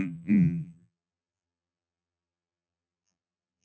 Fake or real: fake